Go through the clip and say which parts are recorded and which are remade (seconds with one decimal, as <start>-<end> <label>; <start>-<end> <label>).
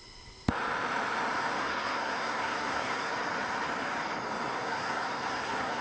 0.0-1.6 recorded; 1.6-3.1 remade; 3.1-4.5 recorded; 4.5-5.8 remade